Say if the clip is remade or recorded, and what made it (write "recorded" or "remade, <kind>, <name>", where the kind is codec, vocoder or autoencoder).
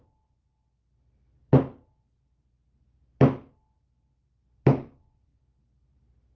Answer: recorded